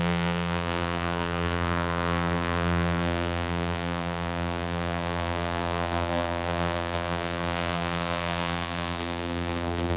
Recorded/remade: remade